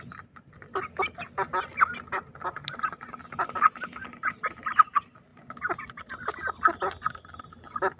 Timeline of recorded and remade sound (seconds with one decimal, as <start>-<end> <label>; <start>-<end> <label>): 0.0-8.0 recorded